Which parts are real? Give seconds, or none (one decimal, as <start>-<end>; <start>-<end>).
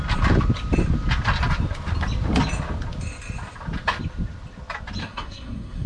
0.0-5.0